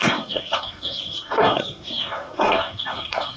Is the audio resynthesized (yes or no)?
yes